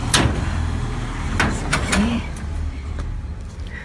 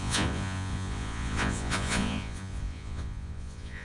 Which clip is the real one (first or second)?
first